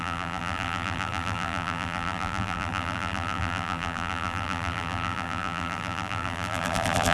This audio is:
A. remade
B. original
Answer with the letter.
A